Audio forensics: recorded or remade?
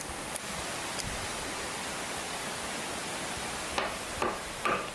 recorded